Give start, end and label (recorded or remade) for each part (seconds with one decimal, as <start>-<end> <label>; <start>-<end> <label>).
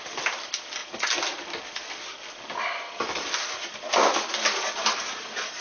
0.0-5.6 recorded